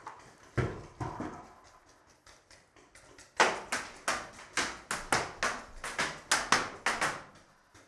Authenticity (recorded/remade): recorded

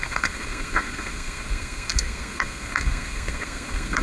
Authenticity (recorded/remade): remade